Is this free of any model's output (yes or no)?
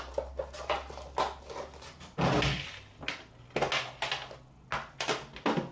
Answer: yes